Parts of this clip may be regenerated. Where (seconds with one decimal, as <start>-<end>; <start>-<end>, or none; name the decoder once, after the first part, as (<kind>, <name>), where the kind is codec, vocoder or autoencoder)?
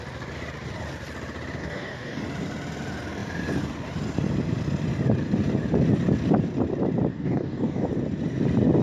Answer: 1.6-2.2 (codec, DAC); 7.1-7.9